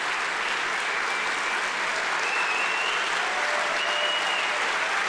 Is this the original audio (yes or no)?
yes